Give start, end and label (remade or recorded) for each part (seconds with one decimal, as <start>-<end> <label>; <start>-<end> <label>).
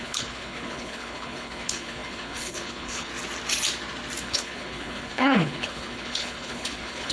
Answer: 0.0-3.1 remade; 3.1-4.2 recorded; 4.2-7.1 remade